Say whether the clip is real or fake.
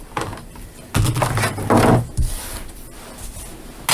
real